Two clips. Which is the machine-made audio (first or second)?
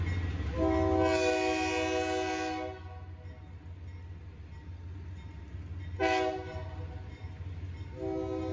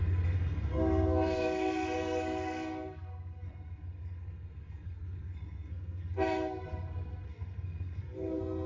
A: second